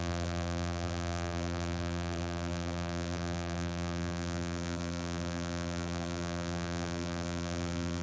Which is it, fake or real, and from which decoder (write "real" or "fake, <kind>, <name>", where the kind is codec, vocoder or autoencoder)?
fake, vocoder, BigVGAN v2